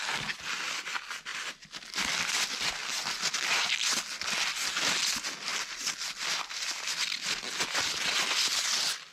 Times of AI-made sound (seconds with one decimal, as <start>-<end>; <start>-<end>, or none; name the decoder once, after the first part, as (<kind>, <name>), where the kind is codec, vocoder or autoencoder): none